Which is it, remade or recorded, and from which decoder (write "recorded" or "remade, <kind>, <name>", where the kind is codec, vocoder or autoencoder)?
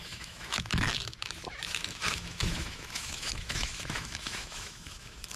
remade, autoencoder, DAC-VAE